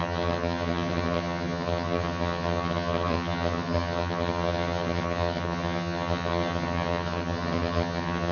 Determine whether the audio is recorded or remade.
remade